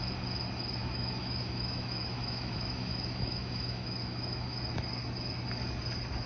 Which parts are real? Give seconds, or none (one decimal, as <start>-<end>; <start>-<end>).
0.0-0.8; 4.6-6.3